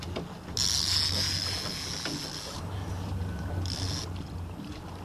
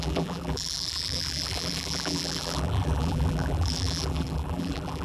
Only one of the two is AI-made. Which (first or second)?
second